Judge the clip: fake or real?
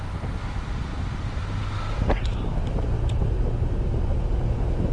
real